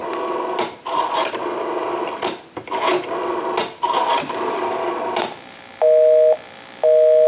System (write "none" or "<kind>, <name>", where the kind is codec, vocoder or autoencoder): none